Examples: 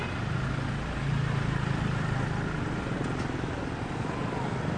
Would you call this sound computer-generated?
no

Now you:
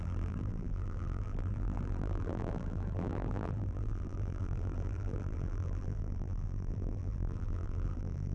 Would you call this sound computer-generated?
yes